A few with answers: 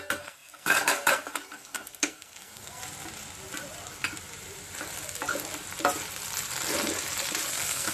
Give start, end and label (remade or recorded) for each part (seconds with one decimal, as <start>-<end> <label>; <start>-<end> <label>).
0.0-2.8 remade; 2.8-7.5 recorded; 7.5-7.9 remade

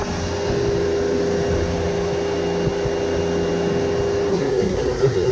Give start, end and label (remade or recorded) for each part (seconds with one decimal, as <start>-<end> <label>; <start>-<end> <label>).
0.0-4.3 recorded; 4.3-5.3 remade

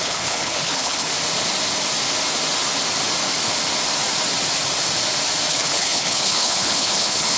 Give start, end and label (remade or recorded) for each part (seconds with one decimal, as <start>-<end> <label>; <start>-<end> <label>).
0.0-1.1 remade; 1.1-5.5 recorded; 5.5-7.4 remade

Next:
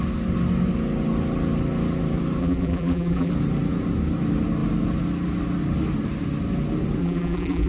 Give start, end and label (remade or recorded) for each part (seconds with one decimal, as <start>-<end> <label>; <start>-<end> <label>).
0.0-2.4 recorded; 2.4-3.3 remade; 3.3-7.0 recorded; 7.0-7.7 remade